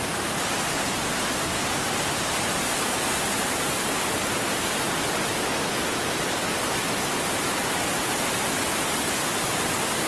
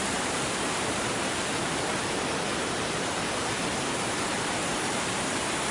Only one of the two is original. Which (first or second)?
first